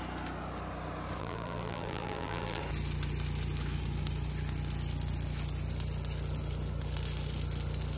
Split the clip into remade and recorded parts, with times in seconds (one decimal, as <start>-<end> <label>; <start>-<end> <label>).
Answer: 0.0-1.2 recorded; 1.2-2.6 remade; 2.6-8.0 recorded